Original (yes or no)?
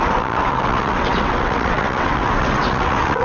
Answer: no